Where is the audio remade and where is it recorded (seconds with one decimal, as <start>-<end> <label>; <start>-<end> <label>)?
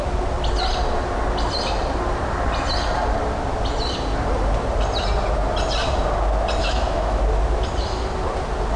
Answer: 0.0-6.6 recorded; 6.6-7.2 remade; 7.2-8.8 recorded